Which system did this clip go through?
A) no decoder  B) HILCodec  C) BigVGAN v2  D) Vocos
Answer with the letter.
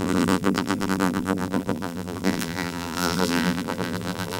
C